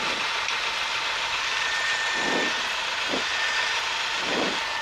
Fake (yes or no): yes